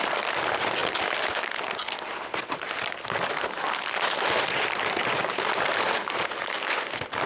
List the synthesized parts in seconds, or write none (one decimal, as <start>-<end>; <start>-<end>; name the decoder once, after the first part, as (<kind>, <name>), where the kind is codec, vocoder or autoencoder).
none